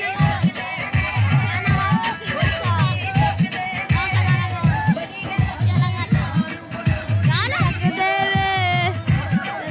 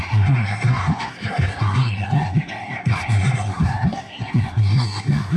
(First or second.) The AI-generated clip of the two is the second